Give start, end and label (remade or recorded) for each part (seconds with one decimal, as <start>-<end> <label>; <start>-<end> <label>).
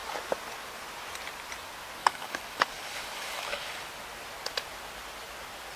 0.0-2.0 recorded; 2.0-3.9 remade; 3.9-5.8 recorded